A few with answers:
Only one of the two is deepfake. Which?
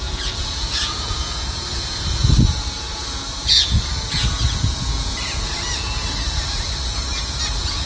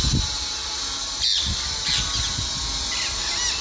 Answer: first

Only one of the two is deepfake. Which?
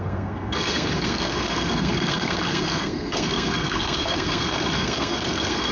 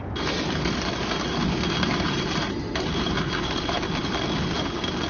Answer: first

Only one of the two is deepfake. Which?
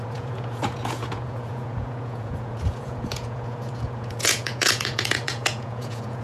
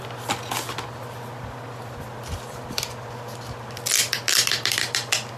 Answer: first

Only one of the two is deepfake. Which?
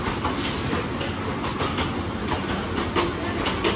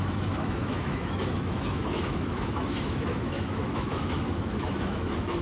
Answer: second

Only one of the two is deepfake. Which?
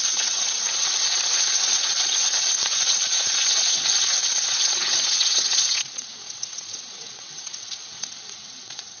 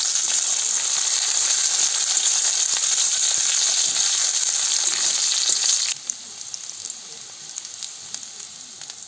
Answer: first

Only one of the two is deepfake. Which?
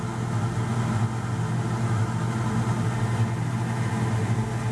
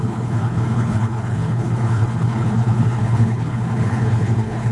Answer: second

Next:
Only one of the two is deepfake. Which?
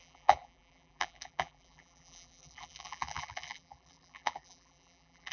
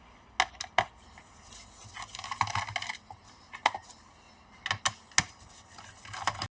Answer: first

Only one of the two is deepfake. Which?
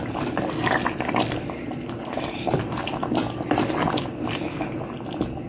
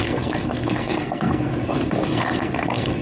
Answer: second